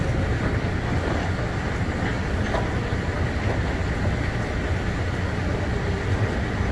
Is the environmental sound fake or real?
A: real